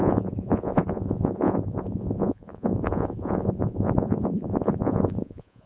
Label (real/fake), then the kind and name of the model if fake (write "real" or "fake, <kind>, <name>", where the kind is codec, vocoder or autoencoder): fake, vocoder, Vocos